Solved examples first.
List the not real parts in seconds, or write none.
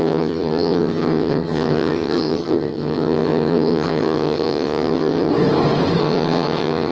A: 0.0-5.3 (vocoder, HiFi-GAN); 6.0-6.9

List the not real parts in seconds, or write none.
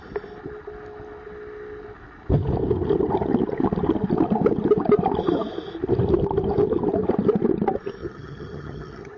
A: 8.0-9.2 (vocoder, HiFi-GAN)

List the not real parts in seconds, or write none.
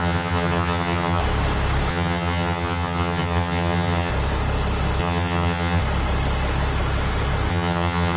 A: 0.0-1.2 (vocoder, HiFi-GAN); 1.9-4.1; 5.0-5.8; 7.5-8.2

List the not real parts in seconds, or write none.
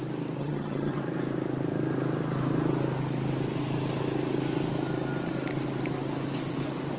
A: 0.4-1.0 (vocoder, HiFi-GAN)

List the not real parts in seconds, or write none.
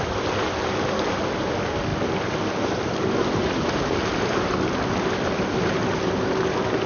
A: none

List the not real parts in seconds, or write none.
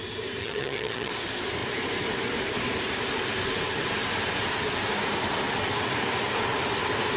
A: 0.4-1.1 (vocoder, HiFi-GAN)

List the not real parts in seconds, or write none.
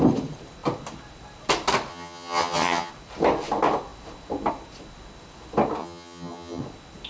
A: 1.9-2.9 (vocoder, HiFi-GAN); 5.8-6.6